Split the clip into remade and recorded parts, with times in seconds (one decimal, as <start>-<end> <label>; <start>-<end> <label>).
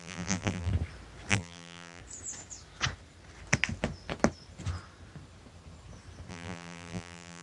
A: 0.0-0.7 remade; 0.7-1.3 recorded; 1.3-2.0 remade; 2.0-6.3 recorded; 6.3-7.4 remade